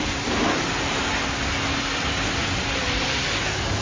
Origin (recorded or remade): recorded